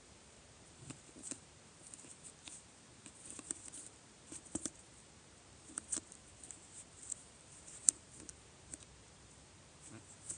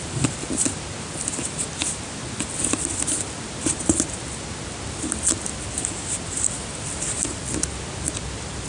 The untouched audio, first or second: second